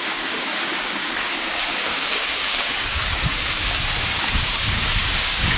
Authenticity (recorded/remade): remade